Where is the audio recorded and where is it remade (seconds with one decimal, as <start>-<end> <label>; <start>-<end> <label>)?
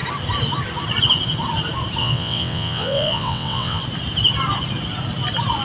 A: 0.0-2.0 recorded; 2.0-3.8 remade; 3.8-5.6 recorded